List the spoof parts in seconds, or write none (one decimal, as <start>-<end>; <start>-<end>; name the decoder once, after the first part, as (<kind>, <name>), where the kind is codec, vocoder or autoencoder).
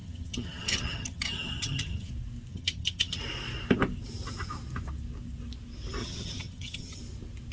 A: 0.0-2.1 (vocoder, HiFi-GAN); 2.5-3.2; 6.0-7.0